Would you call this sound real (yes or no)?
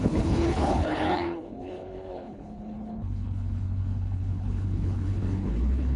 no